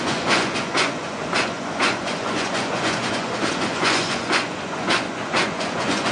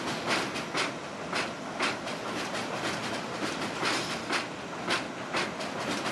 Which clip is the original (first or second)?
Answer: second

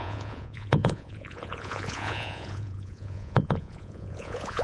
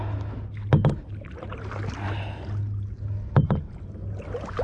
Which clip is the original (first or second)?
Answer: second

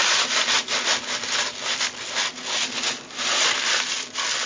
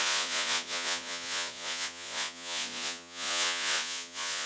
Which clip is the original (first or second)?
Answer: first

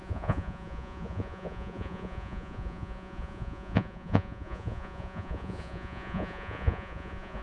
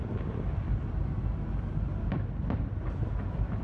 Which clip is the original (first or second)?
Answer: second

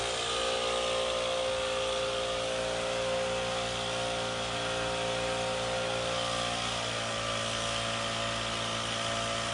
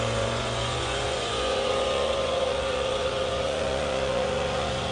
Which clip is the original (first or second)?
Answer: first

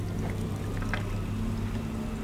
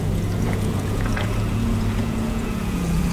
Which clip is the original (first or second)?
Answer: first